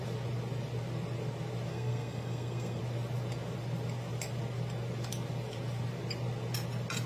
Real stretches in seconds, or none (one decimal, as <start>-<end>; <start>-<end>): 0.0-1.7; 2.8-7.1